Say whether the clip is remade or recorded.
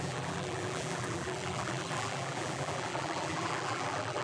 remade